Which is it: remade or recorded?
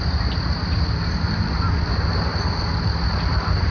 recorded